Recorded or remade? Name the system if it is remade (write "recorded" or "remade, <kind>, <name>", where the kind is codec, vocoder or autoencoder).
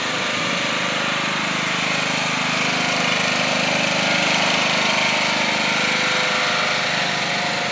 recorded